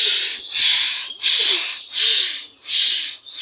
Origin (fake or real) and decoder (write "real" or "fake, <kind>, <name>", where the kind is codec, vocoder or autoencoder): real